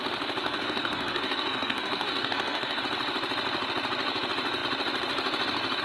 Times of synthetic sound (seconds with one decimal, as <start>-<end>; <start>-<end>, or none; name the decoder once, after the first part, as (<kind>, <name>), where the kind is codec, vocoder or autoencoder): 0.4-2.8 (codec, SNAC)